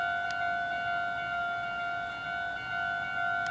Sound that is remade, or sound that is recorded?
recorded